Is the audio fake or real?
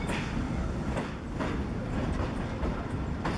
real